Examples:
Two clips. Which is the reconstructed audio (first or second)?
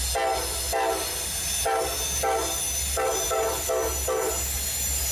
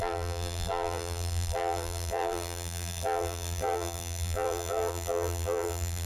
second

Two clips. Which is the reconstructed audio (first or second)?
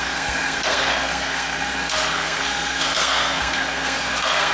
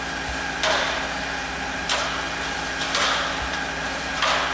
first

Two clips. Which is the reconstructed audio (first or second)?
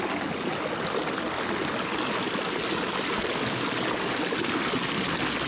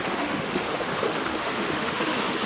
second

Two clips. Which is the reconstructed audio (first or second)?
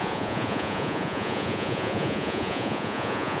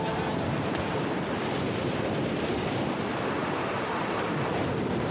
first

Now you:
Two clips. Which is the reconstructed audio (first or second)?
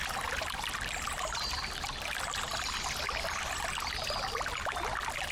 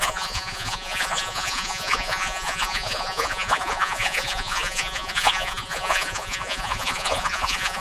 second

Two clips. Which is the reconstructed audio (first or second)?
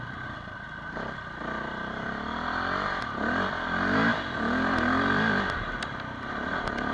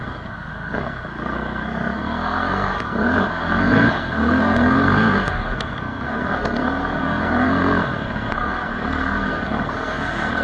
second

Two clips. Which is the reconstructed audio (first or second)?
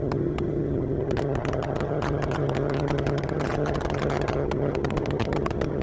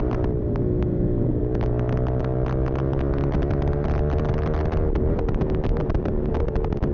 first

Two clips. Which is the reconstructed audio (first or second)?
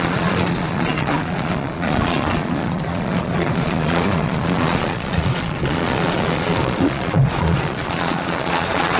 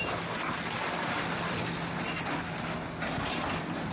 first